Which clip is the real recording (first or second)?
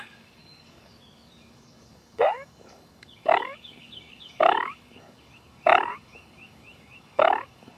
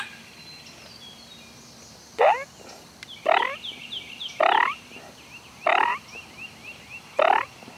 second